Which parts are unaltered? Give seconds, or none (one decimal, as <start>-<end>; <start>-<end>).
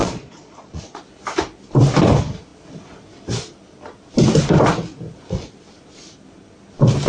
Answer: 1.0-7.1